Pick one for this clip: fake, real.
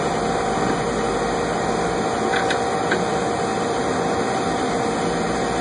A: real